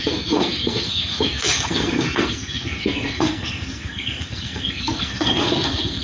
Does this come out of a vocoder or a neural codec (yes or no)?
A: yes